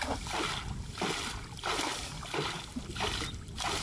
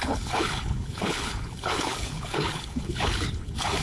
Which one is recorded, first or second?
first